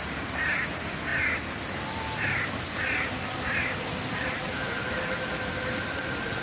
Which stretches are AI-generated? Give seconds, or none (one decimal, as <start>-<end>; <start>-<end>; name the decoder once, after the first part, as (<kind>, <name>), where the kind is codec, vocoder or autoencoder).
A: none